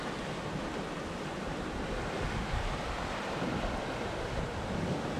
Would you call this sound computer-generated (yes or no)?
no